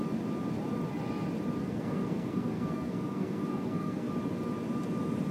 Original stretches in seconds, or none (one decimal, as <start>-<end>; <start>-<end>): 0.0-1.6; 4.1-5.3